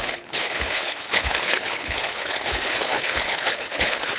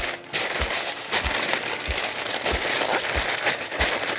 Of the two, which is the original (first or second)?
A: second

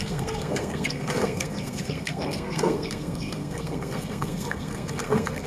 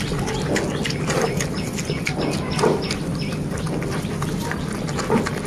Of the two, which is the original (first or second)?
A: second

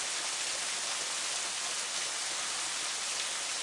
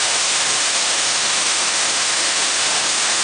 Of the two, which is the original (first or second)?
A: first